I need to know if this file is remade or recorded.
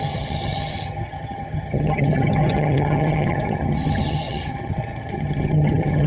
remade